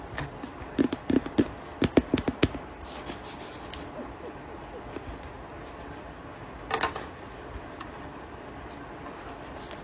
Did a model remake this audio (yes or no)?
no